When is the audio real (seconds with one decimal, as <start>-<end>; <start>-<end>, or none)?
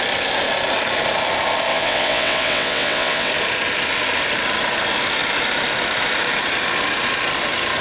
0.0-1.7; 3.3-7.8